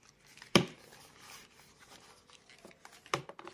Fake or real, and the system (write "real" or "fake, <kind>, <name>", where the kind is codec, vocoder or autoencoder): real